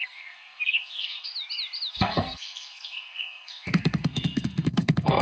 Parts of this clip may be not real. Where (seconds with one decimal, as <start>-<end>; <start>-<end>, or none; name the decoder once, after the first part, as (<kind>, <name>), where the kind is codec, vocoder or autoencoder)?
0.0-1.3 (codec, SNAC); 1.9-5.2